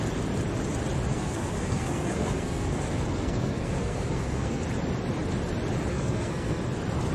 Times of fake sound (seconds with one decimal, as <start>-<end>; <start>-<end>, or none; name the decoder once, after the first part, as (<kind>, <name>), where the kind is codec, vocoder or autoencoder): 1.1-4.6 (codec, SNAC); 5.9-6.6